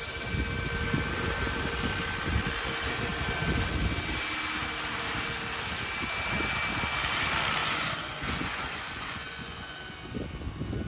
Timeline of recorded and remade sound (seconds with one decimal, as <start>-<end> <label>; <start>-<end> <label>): 0.0-7.6 recorded; 7.6-9.8 remade; 9.8-10.9 recorded